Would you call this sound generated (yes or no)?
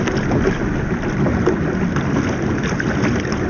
no